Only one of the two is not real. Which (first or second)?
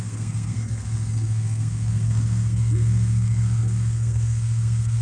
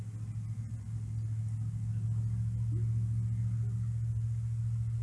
first